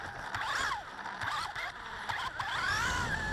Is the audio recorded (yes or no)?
yes